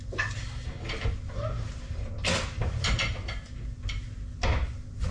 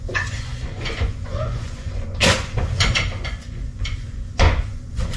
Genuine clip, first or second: first